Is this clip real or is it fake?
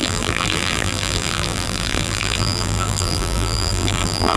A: fake